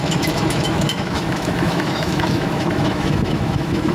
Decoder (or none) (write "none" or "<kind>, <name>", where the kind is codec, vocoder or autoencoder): autoencoder, DAC-VAE